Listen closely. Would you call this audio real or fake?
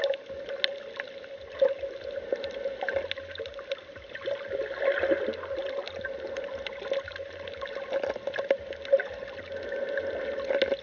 real